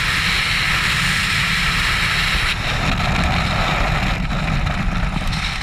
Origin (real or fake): real